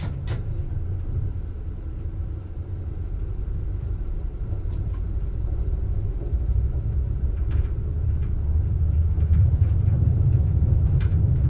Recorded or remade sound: remade